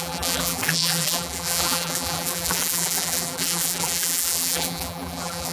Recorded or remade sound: remade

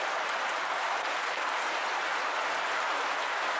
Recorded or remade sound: recorded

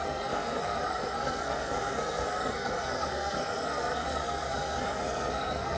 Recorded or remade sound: remade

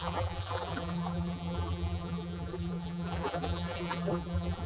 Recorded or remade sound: remade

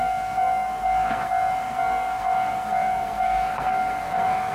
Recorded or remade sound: remade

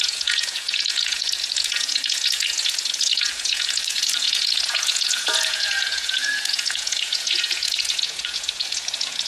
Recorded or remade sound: remade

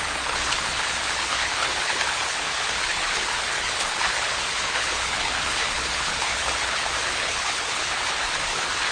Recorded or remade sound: remade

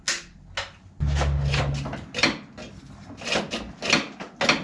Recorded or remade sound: recorded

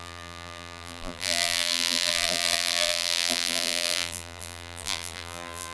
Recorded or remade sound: remade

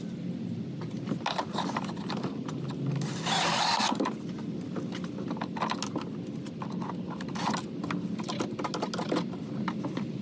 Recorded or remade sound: recorded